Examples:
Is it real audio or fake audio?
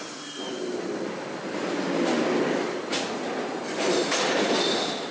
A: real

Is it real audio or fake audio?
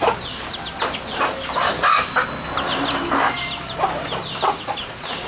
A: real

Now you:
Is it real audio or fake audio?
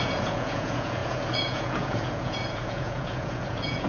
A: fake